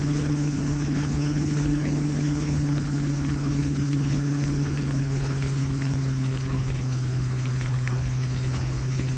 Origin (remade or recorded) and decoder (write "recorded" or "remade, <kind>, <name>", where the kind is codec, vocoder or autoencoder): remade, codec, HILCodec